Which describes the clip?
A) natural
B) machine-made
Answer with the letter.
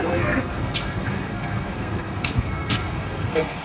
B